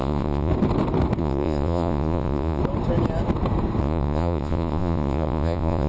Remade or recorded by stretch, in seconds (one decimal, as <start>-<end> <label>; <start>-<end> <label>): 0.0-0.5 remade; 0.5-1.2 recorded; 1.2-2.6 remade; 2.6-3.8 recorded; 3.8-5.9 remade